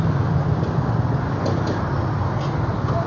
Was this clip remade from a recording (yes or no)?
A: no